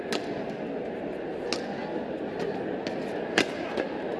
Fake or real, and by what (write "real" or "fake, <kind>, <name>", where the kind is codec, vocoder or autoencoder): real